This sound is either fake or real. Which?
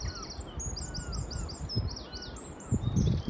real